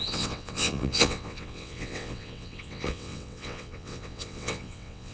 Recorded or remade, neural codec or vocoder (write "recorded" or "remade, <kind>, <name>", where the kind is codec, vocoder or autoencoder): remade, vocoder, WaveNeXt